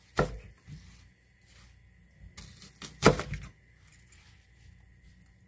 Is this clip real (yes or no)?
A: yes